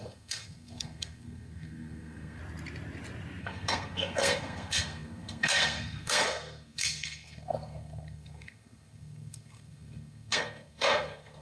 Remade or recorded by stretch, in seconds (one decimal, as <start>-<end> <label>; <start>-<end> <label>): 0.0-2.4 remade; 2.4-3.4 recorded; 3.4-11.4 remade